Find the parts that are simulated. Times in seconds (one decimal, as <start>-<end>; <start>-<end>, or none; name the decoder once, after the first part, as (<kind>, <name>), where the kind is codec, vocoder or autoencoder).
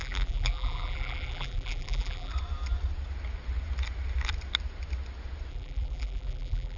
0.0-2.3 (vocoder, BigVGAN v2); 5.5-6.8